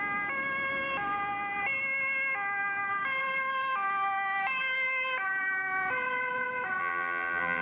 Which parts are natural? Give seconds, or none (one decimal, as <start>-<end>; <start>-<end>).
0.0-6.8